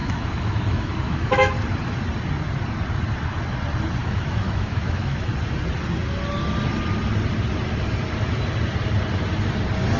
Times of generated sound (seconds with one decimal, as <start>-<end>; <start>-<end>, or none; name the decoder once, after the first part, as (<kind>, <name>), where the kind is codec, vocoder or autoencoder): 0.0-1.5 (autoencoder, DAC-VAE); 4.0-5.3